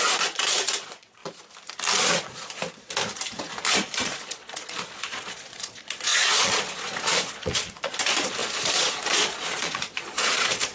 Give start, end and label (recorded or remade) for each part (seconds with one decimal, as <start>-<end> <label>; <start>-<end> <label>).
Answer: 0.0-1.2 remade; 1.2-2.0 recorded; 2.0-2.6 remade; 2.6-3.8 recorded; 3.8-10.7 remade